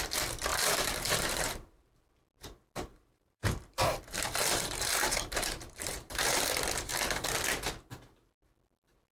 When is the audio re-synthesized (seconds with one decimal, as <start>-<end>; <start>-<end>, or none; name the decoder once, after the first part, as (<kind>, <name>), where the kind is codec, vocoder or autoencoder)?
0.5-1.8 (vocoder, BigVGAN v2); 2.9-6.4